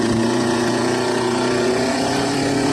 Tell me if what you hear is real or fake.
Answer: fake